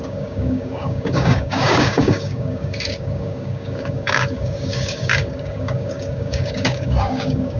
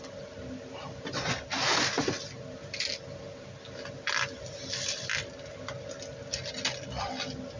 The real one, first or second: second